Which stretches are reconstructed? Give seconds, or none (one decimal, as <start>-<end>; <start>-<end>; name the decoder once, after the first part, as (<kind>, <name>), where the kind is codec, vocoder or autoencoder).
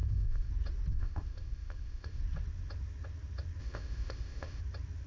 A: 0.0-0.5 (codec, ZipCodec); 0.9-2.2; 3.6-4.6